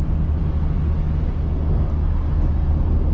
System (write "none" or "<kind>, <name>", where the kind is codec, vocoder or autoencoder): none